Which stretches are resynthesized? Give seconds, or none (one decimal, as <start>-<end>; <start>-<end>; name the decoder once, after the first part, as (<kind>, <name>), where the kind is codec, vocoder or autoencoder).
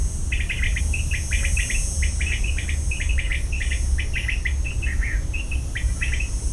none